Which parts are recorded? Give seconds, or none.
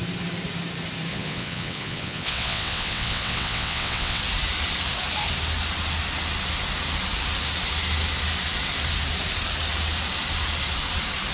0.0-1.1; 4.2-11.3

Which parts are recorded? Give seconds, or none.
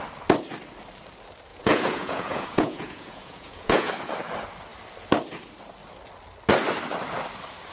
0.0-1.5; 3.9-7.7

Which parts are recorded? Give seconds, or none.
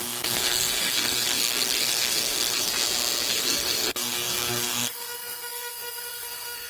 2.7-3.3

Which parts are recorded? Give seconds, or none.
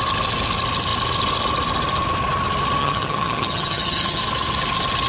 0.0-2.8; 4.2-5.1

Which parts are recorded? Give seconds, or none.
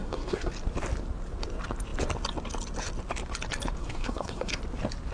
0.5-3.8; 4.6-5.1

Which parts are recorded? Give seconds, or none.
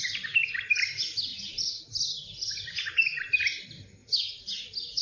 0.0-5.0